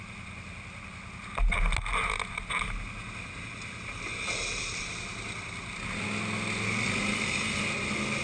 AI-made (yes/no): no